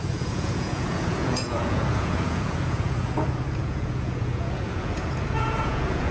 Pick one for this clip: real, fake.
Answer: fake